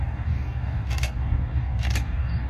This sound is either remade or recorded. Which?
remade